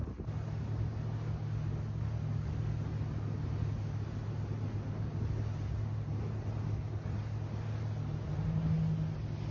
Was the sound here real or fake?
real